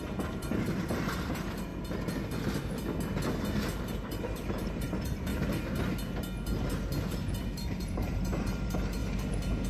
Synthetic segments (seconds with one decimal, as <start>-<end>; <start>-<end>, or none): 0.0-1.7; 3.8-5.3; 7.0-9.0